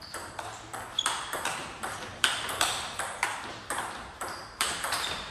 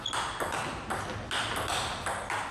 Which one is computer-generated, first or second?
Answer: first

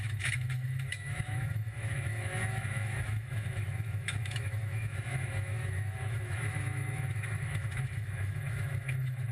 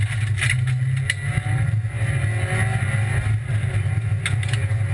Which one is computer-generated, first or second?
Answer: first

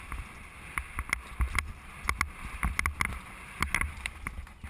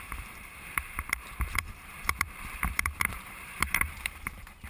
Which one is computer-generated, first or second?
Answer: second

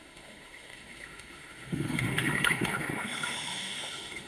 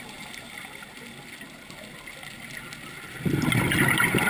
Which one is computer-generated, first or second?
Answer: first